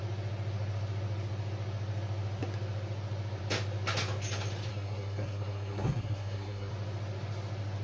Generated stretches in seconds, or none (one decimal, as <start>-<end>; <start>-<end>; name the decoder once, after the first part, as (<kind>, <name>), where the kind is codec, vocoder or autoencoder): 4.7-6.7 (codec, SNAC)